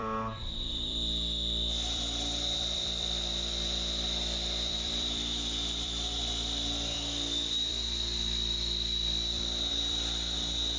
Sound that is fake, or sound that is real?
fake